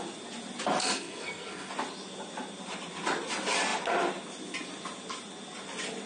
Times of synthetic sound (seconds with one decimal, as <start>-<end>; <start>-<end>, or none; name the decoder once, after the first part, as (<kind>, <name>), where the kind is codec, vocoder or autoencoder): 0.8-1.7 (codec, SNAC)